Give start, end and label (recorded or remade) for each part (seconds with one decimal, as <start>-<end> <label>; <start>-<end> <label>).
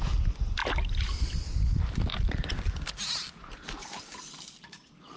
0.0-5.2 recorded